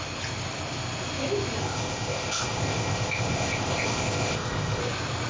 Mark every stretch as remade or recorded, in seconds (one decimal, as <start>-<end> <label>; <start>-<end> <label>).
0.0-1.6 recorded; 1.6-4.8 remade; 4.8-5.3 recorded